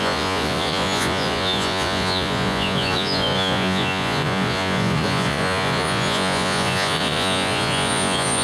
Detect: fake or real fake